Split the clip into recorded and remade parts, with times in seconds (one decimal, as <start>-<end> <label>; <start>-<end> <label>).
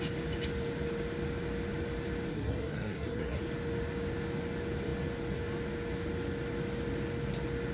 0.0-2.3 recorded; 2.3-3.4 remade; 3.4-7.7 recorded